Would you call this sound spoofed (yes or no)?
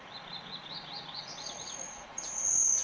yes